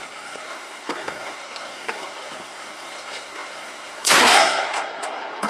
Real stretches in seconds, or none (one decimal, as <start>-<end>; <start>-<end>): none